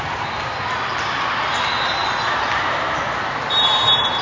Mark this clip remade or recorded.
recorded